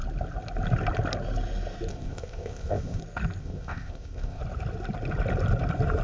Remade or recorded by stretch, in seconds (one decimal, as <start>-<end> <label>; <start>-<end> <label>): 0.0-1.9 recorded; 1.9-3.0 remade; 3.0-3.4 recorded; 3.4-4.4 remade; 4.4-6.0 recorded